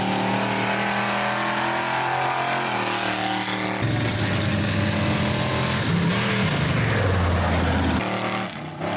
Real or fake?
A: real